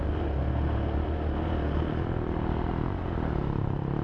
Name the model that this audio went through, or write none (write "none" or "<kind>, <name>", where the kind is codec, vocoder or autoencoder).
none